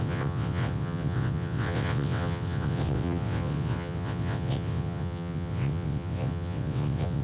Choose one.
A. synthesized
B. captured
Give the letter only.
A